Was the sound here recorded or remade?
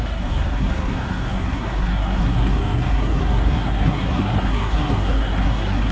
remade